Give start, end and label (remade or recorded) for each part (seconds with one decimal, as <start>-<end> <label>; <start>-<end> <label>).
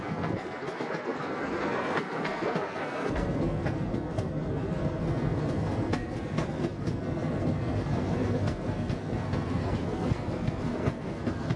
0.0-11.6 remade